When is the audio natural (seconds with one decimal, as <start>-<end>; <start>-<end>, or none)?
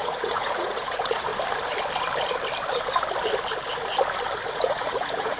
1.3-4.5